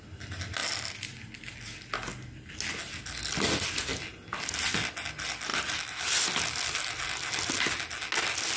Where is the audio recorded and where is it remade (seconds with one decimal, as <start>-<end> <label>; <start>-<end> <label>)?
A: 0.0-8.6 recorded